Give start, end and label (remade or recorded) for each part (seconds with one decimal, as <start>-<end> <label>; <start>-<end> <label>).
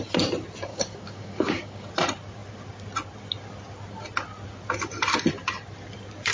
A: 0.0-0.7 recorded; 0.7-1.9 remade; 1.9-6.3 recorded